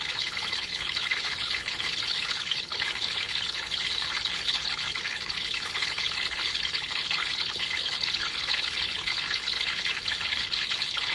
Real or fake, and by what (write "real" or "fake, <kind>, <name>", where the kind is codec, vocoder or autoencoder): fake, codec, HILCodec